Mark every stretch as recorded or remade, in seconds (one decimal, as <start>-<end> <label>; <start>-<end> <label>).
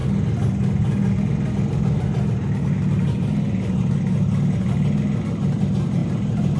0.0-6.6 recorded